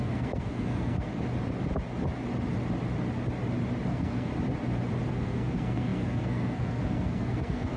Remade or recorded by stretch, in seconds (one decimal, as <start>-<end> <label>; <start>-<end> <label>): 0.0-1.1 remade; 1.1-3.9 recorded; 3.9-4.3 remade; 4.3-5.1 recorded; 5.1-7.8 remade